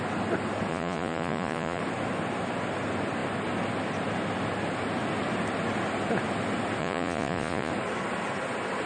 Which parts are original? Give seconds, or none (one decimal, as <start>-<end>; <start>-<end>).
0.0-0.7; 1.8-6.8; 7.7-8.9